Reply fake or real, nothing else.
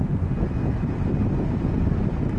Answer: real